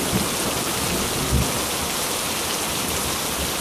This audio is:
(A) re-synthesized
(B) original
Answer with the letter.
B